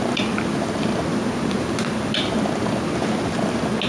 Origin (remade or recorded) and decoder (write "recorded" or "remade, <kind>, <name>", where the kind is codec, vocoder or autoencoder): recorded